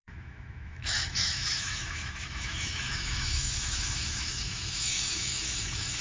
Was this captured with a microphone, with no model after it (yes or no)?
no